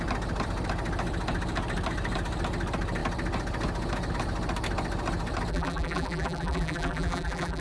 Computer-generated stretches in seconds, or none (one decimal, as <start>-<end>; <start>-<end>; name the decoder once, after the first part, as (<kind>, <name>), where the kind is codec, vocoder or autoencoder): 5.5-7.6 (vocoder, BigVGAN v2)